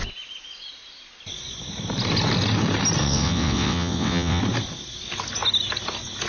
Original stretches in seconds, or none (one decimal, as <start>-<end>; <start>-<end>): 0.0-3.0; 4.4-6.3